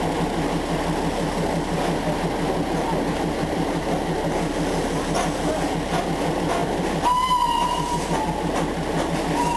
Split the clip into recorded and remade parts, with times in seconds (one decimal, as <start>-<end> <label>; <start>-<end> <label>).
0.0-6.6 recorded; 6.6-8.0 remade; 8.0-9.6 recorded